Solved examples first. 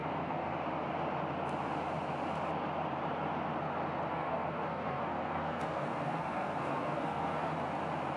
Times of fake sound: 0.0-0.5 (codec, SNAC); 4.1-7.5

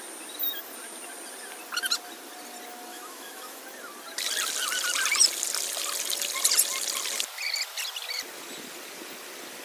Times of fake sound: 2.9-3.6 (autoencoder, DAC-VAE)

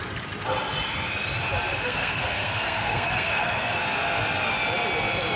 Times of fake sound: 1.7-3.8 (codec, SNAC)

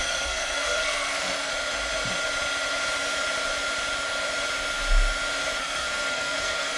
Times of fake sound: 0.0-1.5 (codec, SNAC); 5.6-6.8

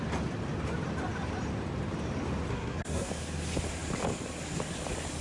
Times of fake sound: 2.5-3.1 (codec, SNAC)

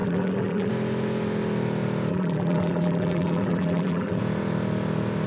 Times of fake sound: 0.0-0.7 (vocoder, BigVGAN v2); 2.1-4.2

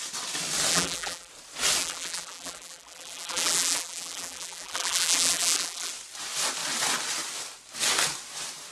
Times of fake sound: 0.7-1.3 (vocoder, BigVGAN v2); 1.8-5.9

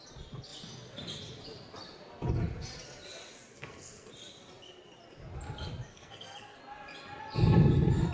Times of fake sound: 3.5-4.1 (codec, SNAC); 5.9-6.6